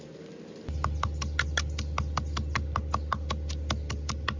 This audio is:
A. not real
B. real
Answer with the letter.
B